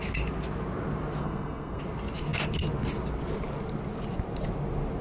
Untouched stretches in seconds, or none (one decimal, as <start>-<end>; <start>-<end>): 0.0-1.2; 1.8-5.0